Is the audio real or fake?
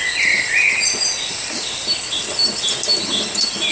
real